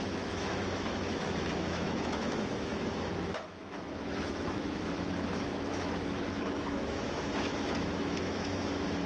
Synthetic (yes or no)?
yes